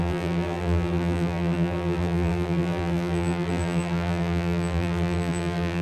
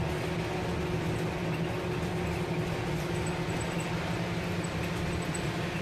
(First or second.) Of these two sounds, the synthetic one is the first